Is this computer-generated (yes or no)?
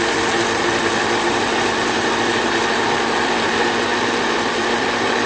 yes